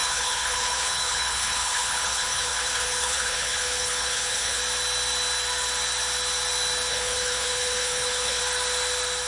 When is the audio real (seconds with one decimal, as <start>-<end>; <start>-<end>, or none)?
4.6-6.9; 8.4-9.3